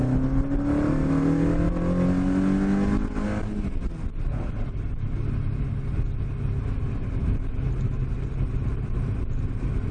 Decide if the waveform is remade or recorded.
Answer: recorded